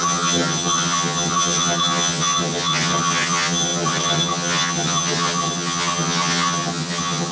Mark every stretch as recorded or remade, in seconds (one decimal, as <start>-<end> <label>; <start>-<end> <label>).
0.0-7.3 remade